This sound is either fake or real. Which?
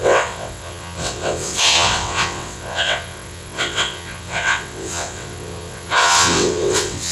fake